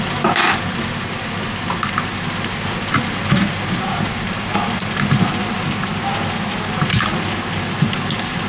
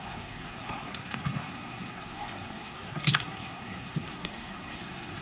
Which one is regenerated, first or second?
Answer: second